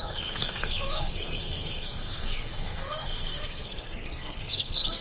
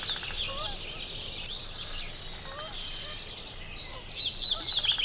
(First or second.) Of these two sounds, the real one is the second